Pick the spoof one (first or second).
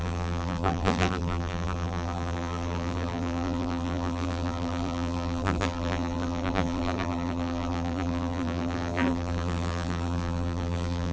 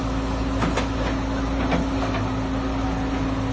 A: first